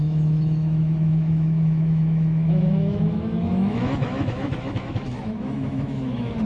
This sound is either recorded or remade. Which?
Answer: remade